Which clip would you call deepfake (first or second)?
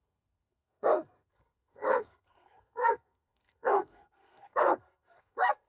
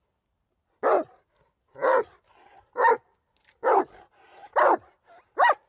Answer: first